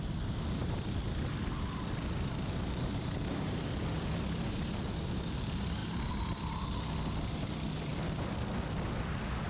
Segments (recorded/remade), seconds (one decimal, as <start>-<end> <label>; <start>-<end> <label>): 0.0-9.5 recorded